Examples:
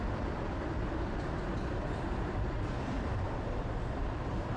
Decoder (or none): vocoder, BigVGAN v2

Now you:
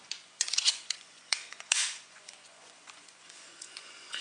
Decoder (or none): vocoder, Vocos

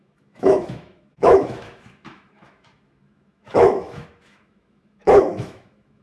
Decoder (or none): autoencoder, DAC-VAE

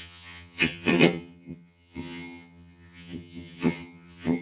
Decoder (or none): vocoder, HiFi-GAN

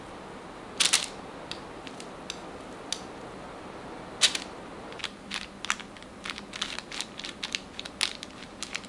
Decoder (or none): none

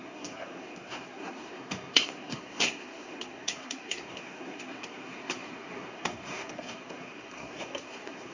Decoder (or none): codec, SNAC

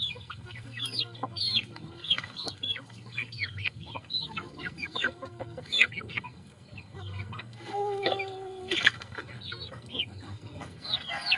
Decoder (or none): codec, SNAC